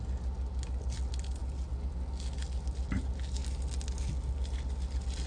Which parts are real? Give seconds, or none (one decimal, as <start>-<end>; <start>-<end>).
0.0-5.3